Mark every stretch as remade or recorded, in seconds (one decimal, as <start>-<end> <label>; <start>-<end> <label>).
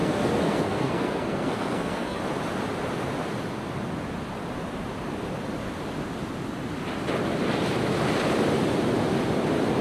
0.0-2.2 remade; 2.2-9.8 recorded